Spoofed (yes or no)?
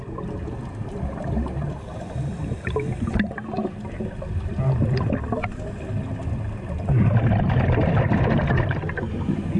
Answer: no